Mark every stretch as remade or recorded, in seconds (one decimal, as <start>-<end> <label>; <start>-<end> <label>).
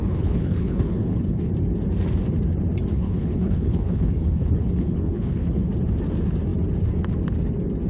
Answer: 0.0-1.5 remade; 1.5-2.9 recorded; 2.9-5.7 remade; 5.7-7.9 recorded